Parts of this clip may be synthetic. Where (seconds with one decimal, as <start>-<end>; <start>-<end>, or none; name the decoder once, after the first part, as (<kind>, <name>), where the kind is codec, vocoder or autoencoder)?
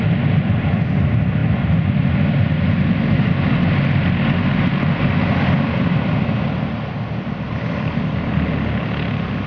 none